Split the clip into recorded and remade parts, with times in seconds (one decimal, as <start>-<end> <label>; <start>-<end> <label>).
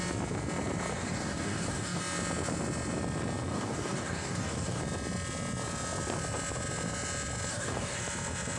0.0-0.9 recorded; 0.9-2.0 remade; 2.0-3.5 recorded; 3.5-4.8 remade; 4.8-7.5 recorded; 7.5-8.0 remade; 8.0-8.6 recorded